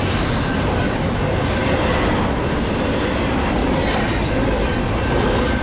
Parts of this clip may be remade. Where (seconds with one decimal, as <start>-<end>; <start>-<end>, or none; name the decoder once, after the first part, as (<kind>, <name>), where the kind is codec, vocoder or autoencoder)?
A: 0.0-0.8 (vocoder, BigVGAN v2); 3.6-4.3